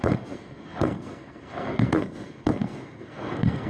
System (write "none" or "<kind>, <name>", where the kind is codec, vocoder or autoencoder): codec, SNAC